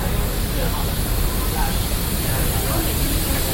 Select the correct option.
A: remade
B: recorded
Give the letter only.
B